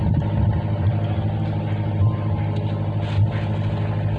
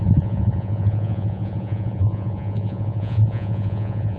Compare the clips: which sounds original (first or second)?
first